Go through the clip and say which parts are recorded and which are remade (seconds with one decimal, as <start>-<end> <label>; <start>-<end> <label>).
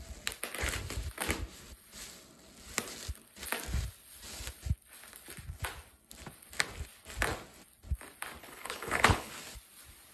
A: 0.0-8.4 recorded; 8.4-9.3 remade; 9.3-10.1 recorded